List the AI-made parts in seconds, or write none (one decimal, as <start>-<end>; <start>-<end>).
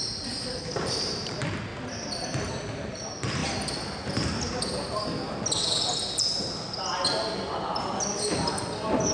none